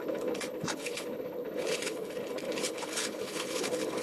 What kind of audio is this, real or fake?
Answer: fake